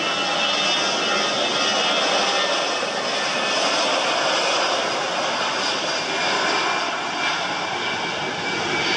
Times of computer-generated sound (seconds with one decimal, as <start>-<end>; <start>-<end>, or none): none

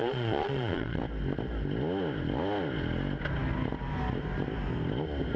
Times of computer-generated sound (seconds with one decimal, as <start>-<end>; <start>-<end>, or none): 0.0-1.0

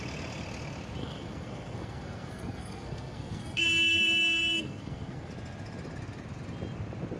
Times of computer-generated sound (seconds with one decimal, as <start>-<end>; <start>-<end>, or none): 1.0-5.3

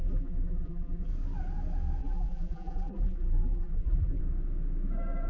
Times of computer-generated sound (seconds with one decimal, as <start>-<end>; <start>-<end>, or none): 0.0-1.1; 2.0-4.2